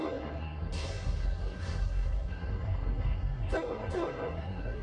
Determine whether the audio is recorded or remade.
remade